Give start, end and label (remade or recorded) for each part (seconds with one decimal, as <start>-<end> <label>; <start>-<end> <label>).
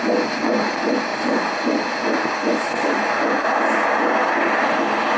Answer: 0.0-5.2 recorded